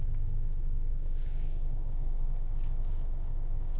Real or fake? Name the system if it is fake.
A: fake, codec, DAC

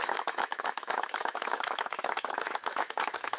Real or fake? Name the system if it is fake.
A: fake, autoencoder, DAC-VAE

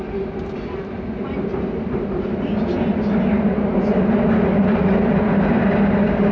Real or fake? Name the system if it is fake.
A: real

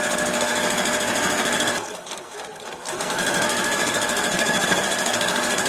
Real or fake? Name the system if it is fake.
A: fake, codec, SNAC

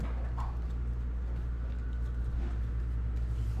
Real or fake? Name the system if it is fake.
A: real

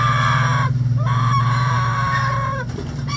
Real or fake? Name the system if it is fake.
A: fake, vocoder, BigVGAN v2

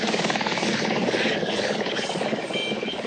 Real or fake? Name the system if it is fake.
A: fake, codec, DAC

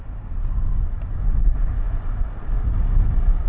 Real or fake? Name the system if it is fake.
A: real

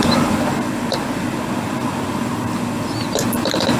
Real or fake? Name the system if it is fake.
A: real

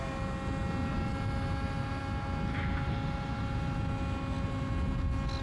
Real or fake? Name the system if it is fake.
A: real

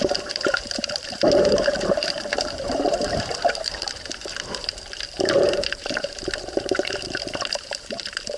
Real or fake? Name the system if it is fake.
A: fake, vocoder, BigVGAN v2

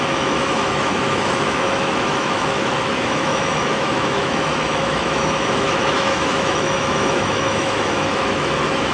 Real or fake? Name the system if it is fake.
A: fake, autoencoder, DAC-VAE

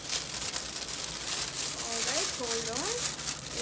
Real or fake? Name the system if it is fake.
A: real